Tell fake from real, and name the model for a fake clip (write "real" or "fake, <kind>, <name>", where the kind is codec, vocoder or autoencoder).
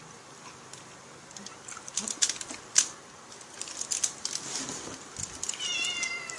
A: real